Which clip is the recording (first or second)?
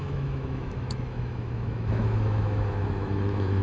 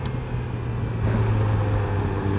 second